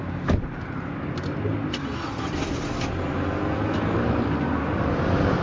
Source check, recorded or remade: recorded